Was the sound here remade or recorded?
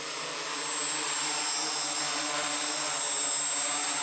recorded